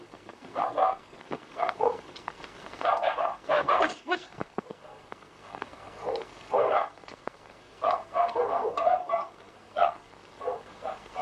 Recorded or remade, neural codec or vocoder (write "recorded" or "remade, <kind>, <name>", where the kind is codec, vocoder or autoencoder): remade, codec, SNAC